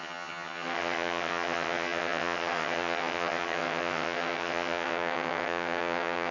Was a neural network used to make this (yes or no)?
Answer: yes